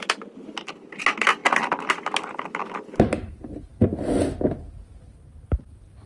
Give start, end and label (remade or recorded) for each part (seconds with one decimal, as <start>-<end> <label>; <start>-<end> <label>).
0.0-6.1 recorded